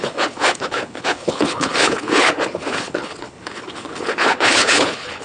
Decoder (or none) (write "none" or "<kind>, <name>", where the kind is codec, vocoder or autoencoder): codec, HILCodec